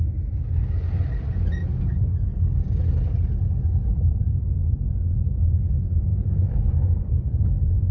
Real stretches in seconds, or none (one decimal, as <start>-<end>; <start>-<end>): 0.0-3.8; 4.3-6.1; 6.7-7.9